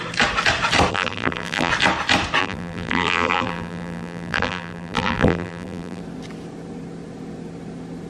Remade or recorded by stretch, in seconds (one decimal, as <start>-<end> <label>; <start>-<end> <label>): 0.0-0.9 recorded; 0.9-1.7 remade; 1.7-2.4 recorded; 2.4-6.0 remade; 6.0-8.1 recorded